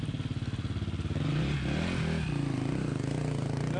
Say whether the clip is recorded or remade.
recorded